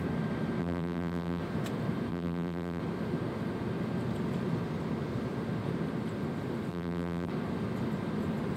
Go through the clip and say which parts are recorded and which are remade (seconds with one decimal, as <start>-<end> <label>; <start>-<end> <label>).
0.0-0.6 recorded; 0.6-1.4 remade; 1.4-2.1 recorded; 2.1-2.8 remade; 2.8-6.7 recorded; 6.7-7.3 remade; 7.3-8.6 recorded

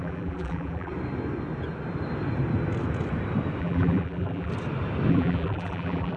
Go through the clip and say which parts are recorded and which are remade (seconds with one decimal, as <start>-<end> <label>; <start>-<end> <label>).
0.0-0.9 remade; 0.9-3.6 recorded; 3.6-4.5 remade; 4.5-5.1 recorded; 5.1-6.2 remade